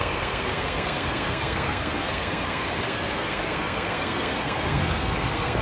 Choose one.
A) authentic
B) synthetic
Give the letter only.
B